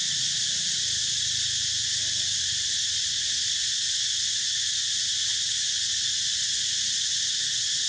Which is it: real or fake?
fake